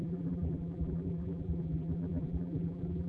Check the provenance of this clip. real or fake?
fake